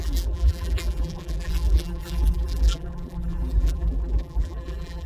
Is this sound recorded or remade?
remade